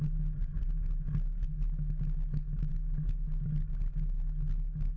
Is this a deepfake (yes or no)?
no